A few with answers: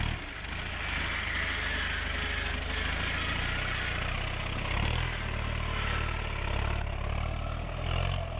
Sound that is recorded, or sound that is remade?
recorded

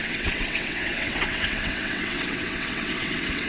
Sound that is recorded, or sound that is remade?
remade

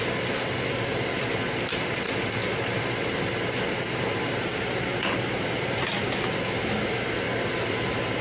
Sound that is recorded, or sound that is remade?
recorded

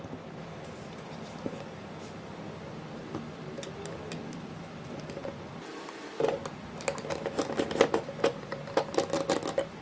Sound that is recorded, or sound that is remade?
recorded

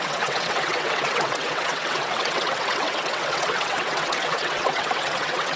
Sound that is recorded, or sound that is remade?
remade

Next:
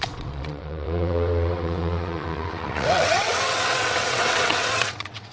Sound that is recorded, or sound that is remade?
remade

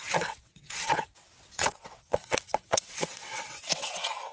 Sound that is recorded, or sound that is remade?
remade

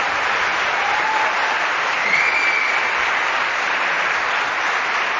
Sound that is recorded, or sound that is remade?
recorded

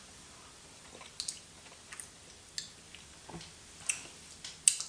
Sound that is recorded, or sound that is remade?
recorded